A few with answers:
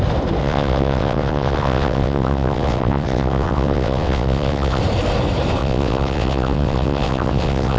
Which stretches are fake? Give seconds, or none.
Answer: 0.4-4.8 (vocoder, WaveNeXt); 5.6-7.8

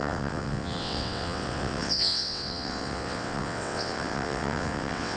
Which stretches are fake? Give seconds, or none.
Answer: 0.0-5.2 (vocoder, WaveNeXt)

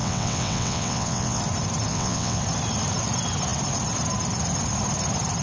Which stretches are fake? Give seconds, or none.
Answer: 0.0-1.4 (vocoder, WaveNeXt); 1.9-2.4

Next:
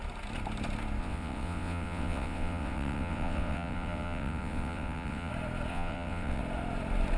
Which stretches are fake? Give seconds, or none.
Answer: 1.0-5.3 (vocoder, WaveNeXt); 5.7-6.4

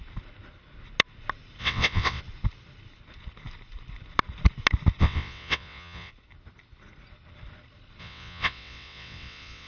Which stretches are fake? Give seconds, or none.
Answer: 1.6-2.2 (vocoder, WaveNeXt); 5.0-6.1; 8.0-9.7

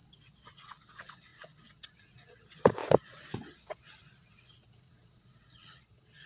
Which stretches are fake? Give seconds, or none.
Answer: 0.0-6.3 (vocoder, WaveNeXt)